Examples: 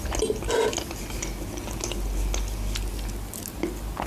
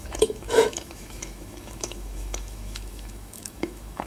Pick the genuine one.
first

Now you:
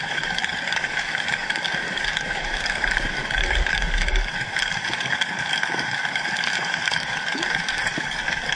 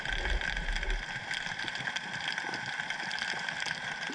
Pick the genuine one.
second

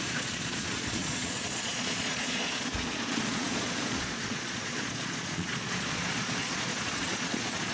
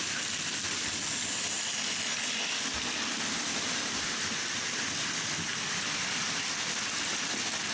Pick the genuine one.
second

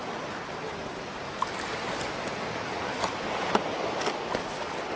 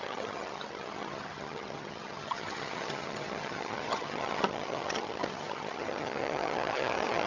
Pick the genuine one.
first